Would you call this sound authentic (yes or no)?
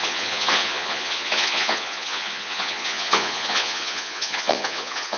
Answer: no